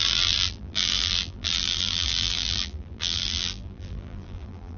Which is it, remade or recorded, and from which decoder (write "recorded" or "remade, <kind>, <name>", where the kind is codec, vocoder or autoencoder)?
remade, vocoder, BigVGAN v2